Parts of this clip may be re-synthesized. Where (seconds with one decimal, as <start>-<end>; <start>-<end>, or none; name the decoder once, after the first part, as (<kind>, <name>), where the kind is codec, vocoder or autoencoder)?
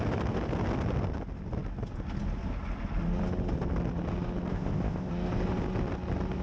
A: 4.5-5.1 (codec, ZipCodec)